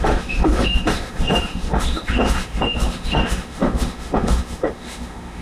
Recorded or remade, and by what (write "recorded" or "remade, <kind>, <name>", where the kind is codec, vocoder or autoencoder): remade, autoencoder, DAC-VAE